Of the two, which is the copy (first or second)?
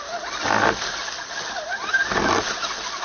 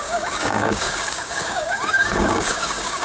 second